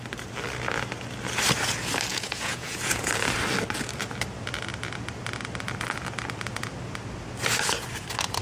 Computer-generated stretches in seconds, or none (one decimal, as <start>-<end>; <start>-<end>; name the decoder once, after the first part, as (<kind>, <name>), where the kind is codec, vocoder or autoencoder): 2.1-3.1 (vocoder, Vocos)

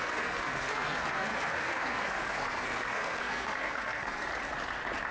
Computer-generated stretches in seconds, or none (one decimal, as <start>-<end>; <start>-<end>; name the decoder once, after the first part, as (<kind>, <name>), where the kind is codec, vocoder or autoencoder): 0.0-4.3 (codec, SNAC)

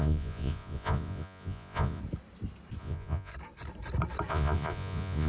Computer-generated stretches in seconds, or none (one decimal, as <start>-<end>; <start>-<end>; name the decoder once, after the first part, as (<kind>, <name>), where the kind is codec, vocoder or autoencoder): 0.0-2.0 (vocoder, Vocos); 2.8-3.3; 4.3-5.3

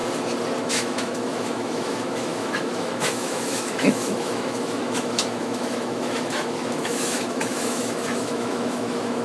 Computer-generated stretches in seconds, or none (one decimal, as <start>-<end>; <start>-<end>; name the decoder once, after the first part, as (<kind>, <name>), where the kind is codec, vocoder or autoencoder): 0.6-9.2 (autoencoder, DAC-VAE)